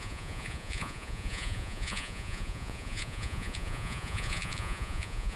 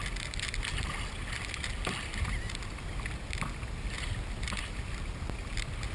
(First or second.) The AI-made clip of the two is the first